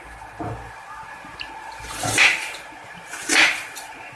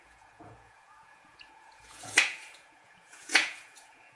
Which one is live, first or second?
first